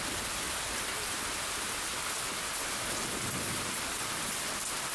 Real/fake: real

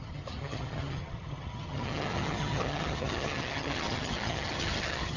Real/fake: fake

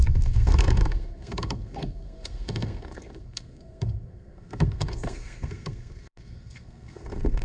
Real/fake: fake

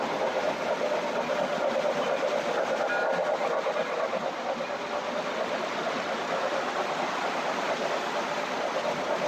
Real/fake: real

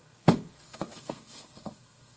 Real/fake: fake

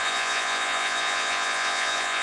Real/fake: fake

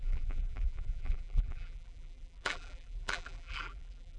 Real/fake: fake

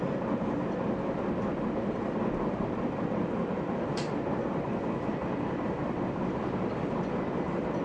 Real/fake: real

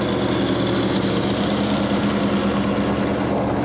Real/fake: real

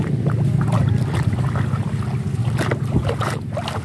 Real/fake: real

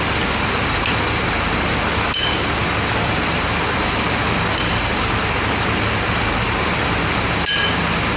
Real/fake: real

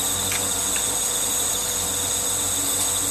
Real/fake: real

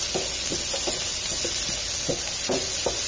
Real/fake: real